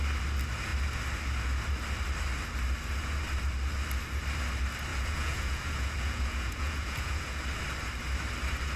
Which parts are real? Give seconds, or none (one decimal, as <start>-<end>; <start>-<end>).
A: 0.0-4.9; 7.4-8.8